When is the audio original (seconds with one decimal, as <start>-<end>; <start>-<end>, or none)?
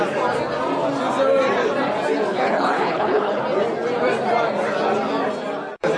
0.0-2.3; 3.4-6.0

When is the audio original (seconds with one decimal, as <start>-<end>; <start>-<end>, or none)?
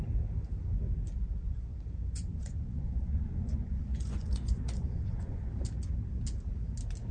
0.0-1.4; 5.5-7.1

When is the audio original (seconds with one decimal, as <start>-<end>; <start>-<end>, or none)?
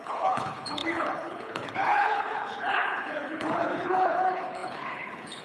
none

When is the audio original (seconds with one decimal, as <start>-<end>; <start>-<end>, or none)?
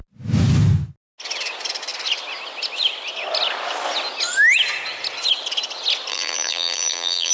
0.0-6.1